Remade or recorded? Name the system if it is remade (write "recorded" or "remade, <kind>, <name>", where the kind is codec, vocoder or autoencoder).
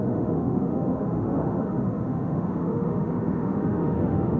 remade, autoencoder, DAC-VAE